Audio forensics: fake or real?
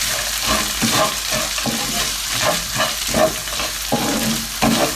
real